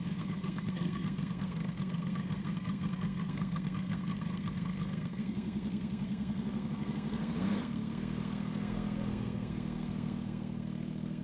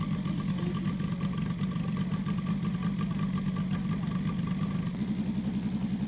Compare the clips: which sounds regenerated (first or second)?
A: first